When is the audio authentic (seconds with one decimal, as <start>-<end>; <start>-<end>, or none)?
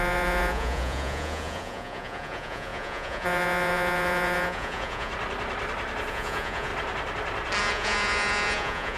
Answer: 5.1-6.1; 6.7-7.6